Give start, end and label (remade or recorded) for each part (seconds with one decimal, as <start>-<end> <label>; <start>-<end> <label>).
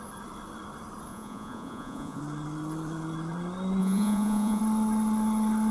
0.0-1.1 recorded; 1.1-2.2 remade; 2.2-3.8 recorded; 3.8-4.6 remade; 4.6-5.7 recorded